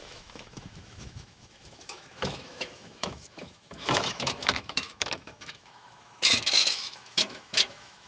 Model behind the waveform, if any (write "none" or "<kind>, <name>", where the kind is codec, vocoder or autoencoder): autoencoder, DAC-VAE